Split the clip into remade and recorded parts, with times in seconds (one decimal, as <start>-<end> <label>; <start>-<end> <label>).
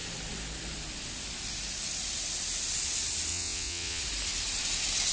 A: 0.0-3.3 recorded; 3.3-4.0 remade; 4.0-5.1 recorded